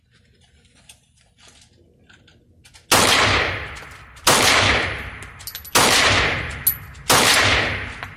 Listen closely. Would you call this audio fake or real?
real